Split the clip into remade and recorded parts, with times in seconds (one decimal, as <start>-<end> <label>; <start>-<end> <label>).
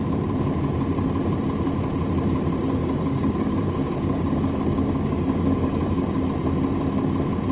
0.0-2.8 recorded; 2.8-6.2 remade; 6.2-7.5 recorded